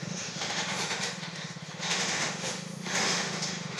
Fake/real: fake